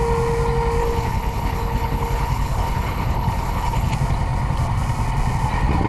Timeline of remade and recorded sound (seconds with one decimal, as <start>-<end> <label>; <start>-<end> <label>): 0.0-0.8 recorded; 0.8-3.9 remade; 3.9-5.9 recorded